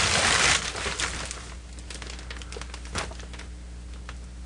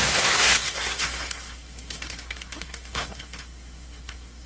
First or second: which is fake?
second